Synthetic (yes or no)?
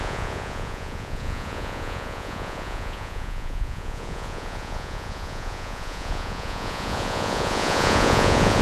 yes